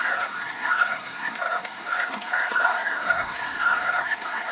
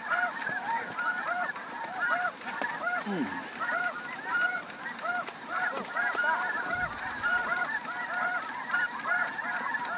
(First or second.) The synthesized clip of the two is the first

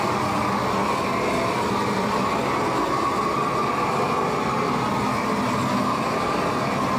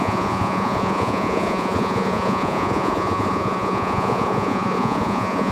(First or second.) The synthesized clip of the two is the second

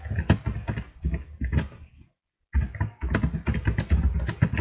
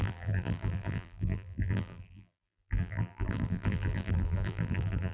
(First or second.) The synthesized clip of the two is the second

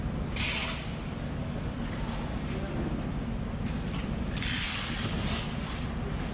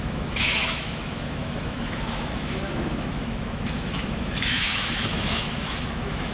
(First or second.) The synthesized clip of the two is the second